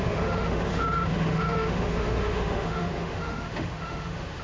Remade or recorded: remade